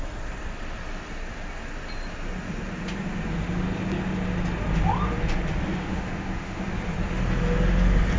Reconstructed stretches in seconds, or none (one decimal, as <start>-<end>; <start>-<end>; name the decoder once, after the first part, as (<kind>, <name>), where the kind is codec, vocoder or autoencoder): 5.8-6.6 (autoencoder, DAC-VAE)